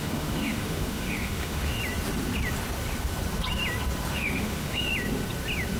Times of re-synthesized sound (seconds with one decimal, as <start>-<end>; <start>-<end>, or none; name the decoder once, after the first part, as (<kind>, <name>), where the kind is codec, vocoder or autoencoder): 0.0-1.8 (autoencoder, DAC-VAE); 4.1-4.9